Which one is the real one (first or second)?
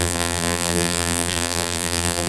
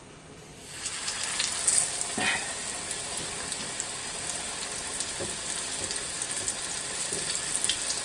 second